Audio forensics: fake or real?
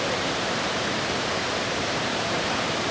fake